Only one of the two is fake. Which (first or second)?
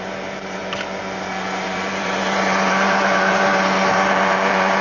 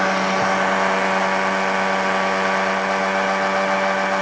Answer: first